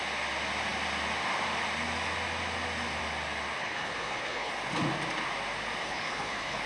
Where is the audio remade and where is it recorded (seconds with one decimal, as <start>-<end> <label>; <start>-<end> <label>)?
0.0-3.6 recorded; 3.6-4.5 remade; 4.5-5.8 recorded; 5.8-6.7 remade